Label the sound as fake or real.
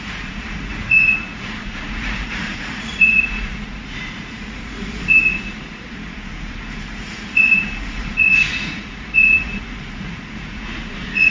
fake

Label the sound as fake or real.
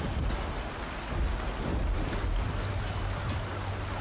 real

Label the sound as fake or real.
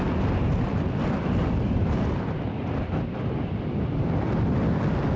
real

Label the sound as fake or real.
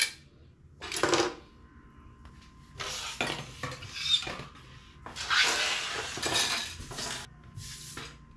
real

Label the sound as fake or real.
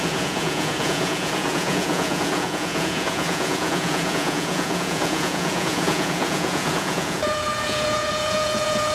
fake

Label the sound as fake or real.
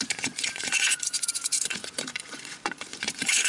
fake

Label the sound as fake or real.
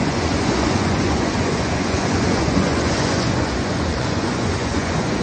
fake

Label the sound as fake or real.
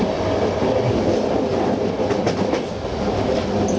real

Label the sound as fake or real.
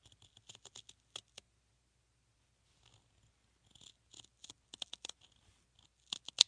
real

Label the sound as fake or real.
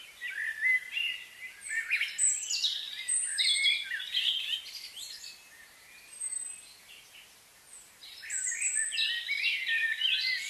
real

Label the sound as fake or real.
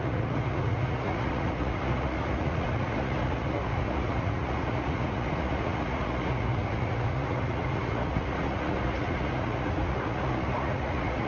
fake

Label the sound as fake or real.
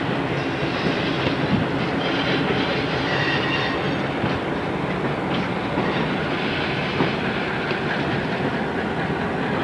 real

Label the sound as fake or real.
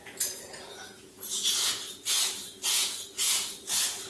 fake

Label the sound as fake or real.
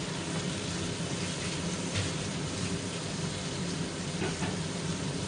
real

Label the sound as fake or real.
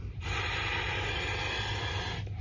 real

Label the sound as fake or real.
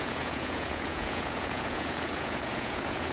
fake